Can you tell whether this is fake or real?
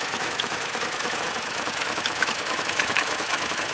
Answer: fake